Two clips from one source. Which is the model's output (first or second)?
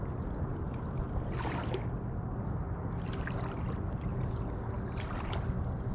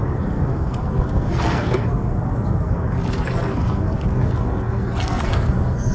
second